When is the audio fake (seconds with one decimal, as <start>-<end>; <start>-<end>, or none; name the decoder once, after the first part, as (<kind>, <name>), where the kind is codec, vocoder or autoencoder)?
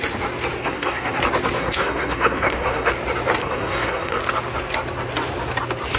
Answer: 0.6-1.2 (codec, SNAC); 1.6-2.9; 3.4-4.2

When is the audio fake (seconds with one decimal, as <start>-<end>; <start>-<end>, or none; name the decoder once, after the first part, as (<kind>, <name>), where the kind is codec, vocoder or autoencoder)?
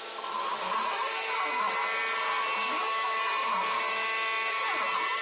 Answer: none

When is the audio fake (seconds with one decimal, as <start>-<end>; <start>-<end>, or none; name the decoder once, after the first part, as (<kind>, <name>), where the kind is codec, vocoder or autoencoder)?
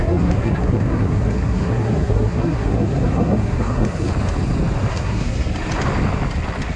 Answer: 0.0-4.1 (codec, SNAC); 4.9-5.5